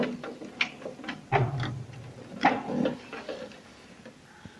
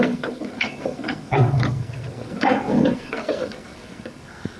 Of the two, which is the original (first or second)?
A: first